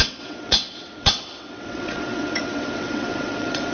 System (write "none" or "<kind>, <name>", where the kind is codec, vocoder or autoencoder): vocoder, WaveNeXt